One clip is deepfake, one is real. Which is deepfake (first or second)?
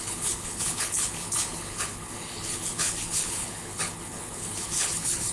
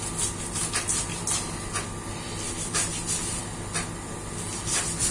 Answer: first